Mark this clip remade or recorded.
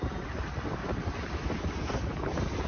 recorded